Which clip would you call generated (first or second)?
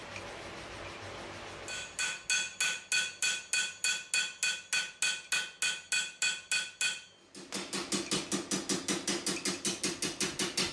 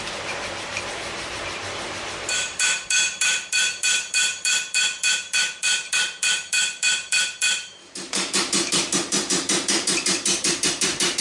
second